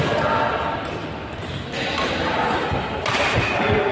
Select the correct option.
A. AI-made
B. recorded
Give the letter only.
B